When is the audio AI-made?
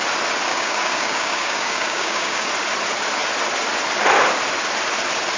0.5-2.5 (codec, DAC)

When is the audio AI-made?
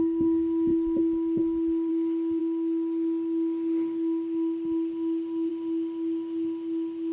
none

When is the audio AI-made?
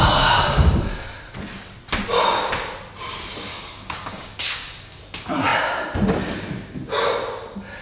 3.5-5.0 (codec, DAC)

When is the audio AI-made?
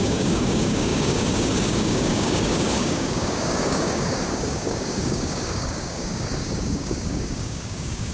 0.0-8.1 (codec, DAC)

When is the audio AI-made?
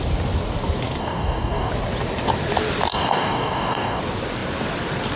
1.0-1.7 (codec, DAC); 2.9-4.0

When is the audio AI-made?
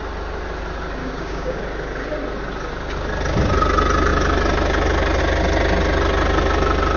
1.0-1.6 (codec, DAC)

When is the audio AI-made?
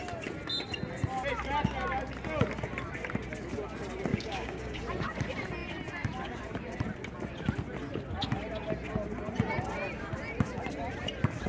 4.1-4.8 (codec, DAC)